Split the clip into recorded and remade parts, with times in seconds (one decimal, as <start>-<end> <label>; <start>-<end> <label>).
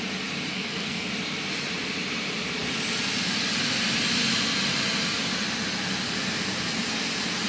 0.0-0.5 recorded; 0.5-1.1 remade; 1.1-7.5 recorded